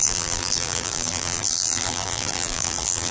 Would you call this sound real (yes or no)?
no